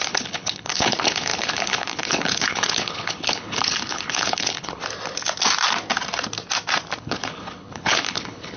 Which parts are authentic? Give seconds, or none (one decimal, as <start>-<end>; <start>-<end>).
4.8-7.0